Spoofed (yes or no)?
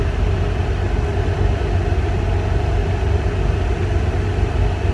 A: no